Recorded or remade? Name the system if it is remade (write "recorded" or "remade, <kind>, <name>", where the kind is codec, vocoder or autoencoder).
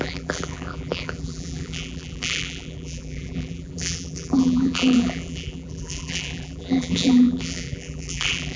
remade, vocoder, BigVGAN v2